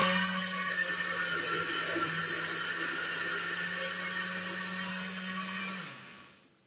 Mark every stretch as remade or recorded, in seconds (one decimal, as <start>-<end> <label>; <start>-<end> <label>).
0.0-0.9 remade; 0.9-4.9 recorded; 4.9-5.6 remade; 5.6-6.7 recorded